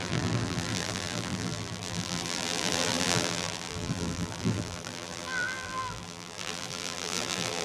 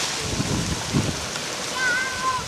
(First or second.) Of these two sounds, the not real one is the first